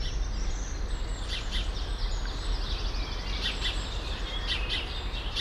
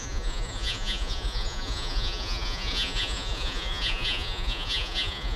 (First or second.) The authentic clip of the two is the first